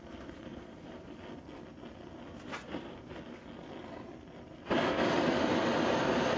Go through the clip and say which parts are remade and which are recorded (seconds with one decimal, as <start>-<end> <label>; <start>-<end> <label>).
0.0-0.5 recorded; 0.5-1.1 remade; 1.1-2.5 recorded; 2.5-3.1 remade; 3.1-6.4 recorded

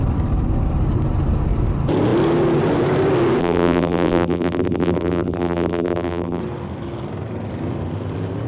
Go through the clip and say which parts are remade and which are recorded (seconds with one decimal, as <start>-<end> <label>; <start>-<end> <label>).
0.0-3.4 recorded; 3.4-6.4 remade; 6.4-8.5 recorded

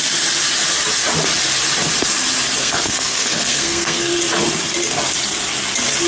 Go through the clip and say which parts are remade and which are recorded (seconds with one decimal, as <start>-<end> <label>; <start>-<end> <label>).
0.0-2.6 recorded; 2.6-4.1 remade; 4.1-6.1 recorded

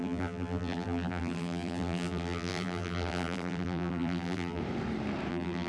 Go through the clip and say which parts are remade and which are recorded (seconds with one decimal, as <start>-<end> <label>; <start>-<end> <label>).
0.0-4.6 remade; 4.6-5.3 recorded; 5.3-5.7 remade

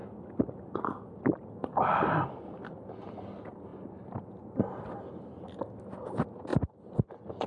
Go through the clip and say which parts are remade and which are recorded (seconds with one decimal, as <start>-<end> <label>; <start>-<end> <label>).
0.0-7.5 recorded

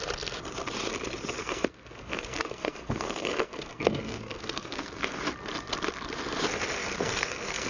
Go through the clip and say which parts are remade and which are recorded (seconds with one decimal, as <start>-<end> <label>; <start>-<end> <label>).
0.0-1.4 recorded; 1.4-5.2 remade; 5.2-6.8 recorded; 6.8-7.7 remade

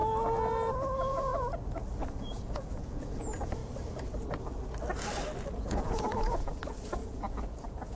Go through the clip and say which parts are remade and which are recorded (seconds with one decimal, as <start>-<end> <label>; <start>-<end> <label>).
0.0-1.0 recorded; 1.0-1.5 remade; 1.5-2.0 recorded; 2.0-3.6 remade; 3.6-5.5 recorded; 5.5-8.0 remade